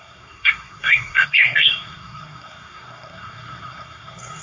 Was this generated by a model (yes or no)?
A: yes